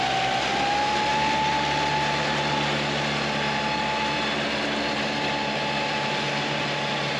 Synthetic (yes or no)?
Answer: no